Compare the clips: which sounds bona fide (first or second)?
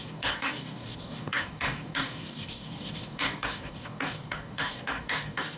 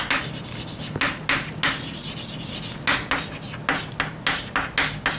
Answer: second